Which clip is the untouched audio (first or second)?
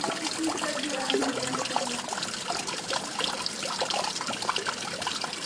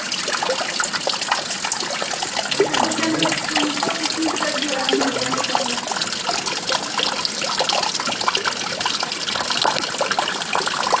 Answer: second